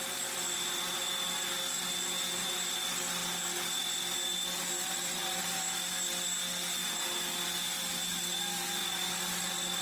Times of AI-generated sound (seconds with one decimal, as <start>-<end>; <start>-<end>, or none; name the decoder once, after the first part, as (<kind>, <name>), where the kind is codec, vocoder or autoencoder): none